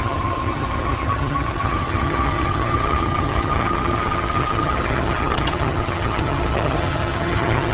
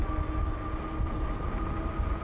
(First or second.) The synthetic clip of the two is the first